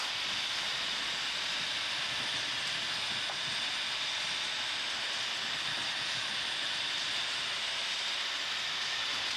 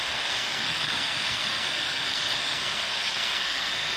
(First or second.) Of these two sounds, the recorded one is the first